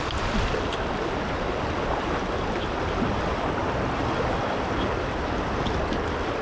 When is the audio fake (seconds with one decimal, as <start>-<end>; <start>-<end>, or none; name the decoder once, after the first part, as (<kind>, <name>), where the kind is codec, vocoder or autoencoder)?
none